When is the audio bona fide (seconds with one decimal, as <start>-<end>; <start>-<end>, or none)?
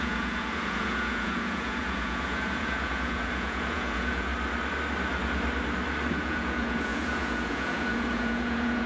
4.3-6.1